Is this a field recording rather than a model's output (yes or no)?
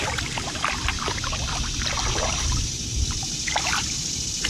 yes